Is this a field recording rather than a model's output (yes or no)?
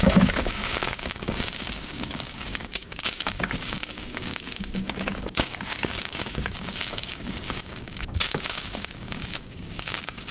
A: no